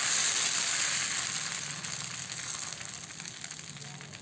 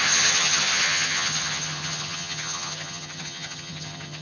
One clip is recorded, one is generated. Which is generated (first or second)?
second